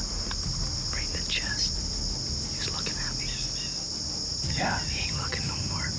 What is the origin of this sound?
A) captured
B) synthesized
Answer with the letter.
A